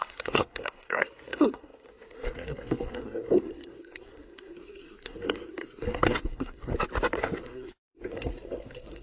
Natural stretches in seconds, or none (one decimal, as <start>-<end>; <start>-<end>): 6.7-7.2